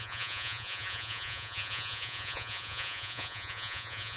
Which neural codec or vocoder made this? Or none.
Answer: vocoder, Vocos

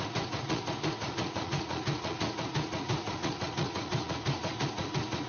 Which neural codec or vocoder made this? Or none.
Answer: vocoder, Vocos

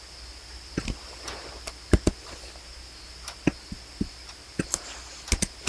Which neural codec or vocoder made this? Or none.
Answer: none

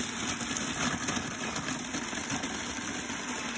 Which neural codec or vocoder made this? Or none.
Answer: none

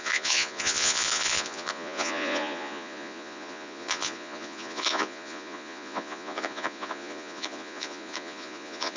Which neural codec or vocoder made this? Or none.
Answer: vocoder, Vocos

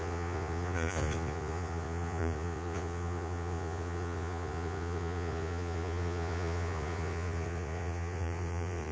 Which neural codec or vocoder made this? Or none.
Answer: vocoder, Vocos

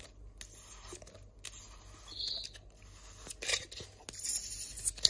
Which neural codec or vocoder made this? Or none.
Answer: none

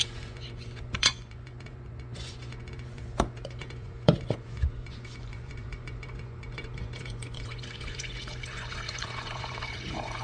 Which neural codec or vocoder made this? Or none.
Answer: vocoder, Vocos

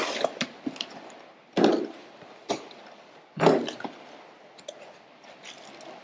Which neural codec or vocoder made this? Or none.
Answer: none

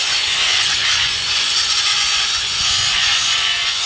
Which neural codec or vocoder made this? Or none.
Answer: vocoder, Vocos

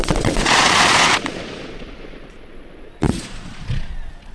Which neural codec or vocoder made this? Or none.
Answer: vocoder, Vocos